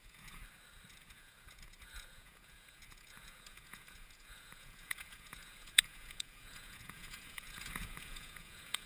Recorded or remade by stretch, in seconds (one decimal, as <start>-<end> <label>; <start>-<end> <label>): 0.0-0.4 remade; 0.4-0.9 recorded; 0.9-8.9 remade